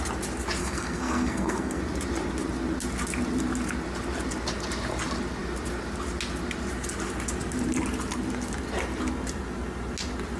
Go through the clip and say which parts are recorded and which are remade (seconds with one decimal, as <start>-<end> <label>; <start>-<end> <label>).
0.0-0.6 recorded; 0.6-1.8 remade; 1.8-10.4 recorded